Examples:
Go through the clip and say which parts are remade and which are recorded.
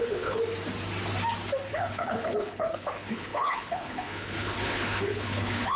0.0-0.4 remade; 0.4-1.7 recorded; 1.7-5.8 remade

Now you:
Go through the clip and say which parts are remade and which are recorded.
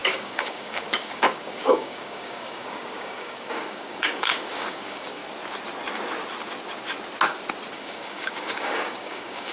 0.0-5.2 remade; 5.2-7.7 recorded; 7.7-9.5 remade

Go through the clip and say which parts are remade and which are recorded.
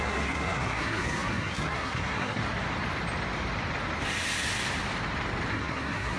0.0-2.4 remade; 2.4-5.5 recorded; 5.5-6.2 remade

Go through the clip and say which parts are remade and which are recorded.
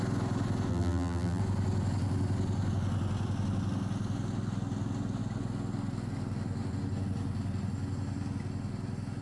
0.0-0.7 recorded; 0.7-1.4 remade; 1.4-9.2 recorded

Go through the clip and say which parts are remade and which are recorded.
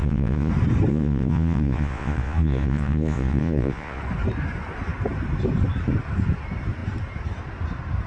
0.0-0.5 remade; 0.5-0.9 recorded; 0.9-4.0 remade; 4.0-8.1 recorded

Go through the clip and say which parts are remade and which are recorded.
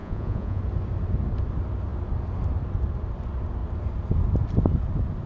0.0-0.6 remade; 0.6-5.3 recorded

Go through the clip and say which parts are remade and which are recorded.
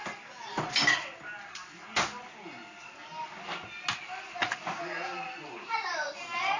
0.0-5.1 recorded; 5.1-6.6 remade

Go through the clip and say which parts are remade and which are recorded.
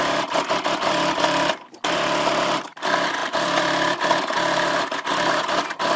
0.0-6.0 recorded